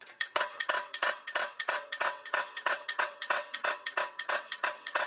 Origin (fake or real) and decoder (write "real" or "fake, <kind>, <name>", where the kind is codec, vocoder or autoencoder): fake, vocoder, WaveNeXt